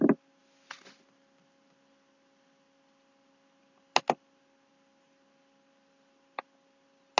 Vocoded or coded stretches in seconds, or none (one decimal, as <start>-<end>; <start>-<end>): none